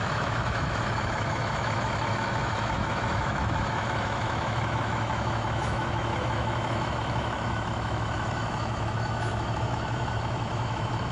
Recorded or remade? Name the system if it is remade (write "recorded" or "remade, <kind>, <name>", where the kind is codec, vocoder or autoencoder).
remade, autoencoder, DAC-VAE